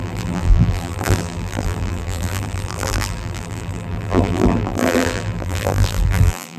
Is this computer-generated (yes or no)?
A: yes